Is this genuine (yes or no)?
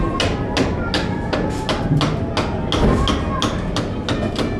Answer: yes